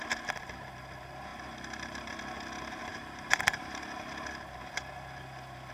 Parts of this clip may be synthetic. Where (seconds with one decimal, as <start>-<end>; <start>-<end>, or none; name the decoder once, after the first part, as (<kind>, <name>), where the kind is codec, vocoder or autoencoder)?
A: 1.3-2.1 (vocoder, BigVGAN v2); 2.9-3.8